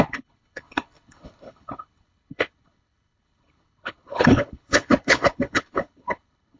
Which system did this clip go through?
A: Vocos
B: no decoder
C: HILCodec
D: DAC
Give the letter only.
C